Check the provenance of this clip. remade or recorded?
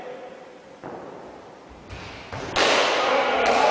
recorded